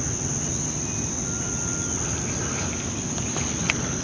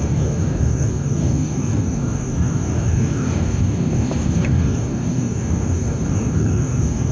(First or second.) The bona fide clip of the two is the first